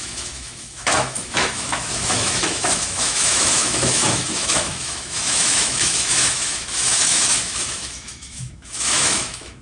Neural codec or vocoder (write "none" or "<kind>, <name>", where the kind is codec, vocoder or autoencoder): autoencoder, DAC-VAE